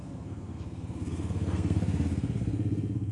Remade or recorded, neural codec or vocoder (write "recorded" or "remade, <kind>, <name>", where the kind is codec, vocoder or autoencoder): remade, codec, SNAC